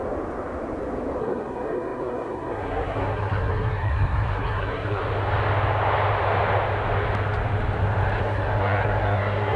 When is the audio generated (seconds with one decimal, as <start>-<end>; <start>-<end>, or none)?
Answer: 1.2-5.0; 8.2-9.6